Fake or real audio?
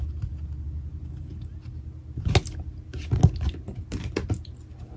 real